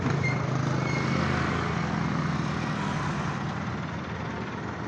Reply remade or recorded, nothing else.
recorded